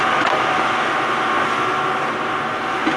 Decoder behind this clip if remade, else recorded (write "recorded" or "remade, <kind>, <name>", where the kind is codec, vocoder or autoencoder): recorded